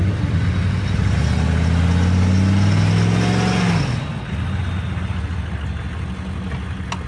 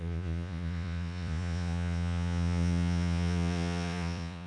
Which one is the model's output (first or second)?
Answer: second